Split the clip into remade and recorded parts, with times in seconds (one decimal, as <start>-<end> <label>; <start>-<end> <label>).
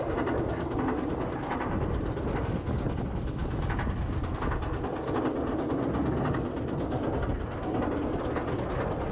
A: 0.0-9.1 recorded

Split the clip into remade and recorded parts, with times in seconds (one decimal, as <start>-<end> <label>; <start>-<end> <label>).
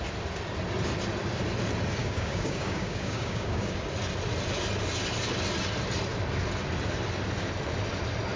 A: 0.0-2.0 recorded; 2.0-3.8 remade; 3.8-8.4 recorded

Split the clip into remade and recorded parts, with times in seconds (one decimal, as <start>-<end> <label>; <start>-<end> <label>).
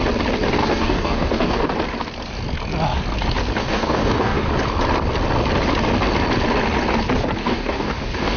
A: 0.0-0.6 recorded; 0.6-1.7 remade; 1.7-3.6 recorded; 3.6-4.5 remade; 4.5-7.4 recorded; 7.4-8.4 remade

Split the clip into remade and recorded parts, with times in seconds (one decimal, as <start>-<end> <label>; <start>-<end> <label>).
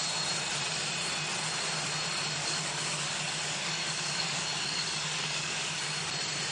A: 0.0-2.4 recorded; 2.4-6.1 remade; 6.1-6.5 recorded